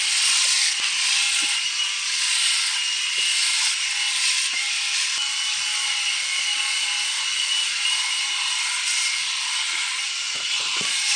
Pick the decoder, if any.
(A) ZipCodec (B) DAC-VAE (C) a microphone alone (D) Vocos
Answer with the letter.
C